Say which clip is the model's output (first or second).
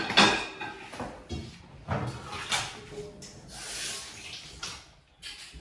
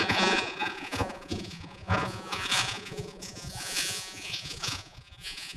second